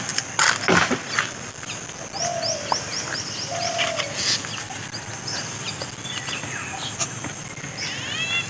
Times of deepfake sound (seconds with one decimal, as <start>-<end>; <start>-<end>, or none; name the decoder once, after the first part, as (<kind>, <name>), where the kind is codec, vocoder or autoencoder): none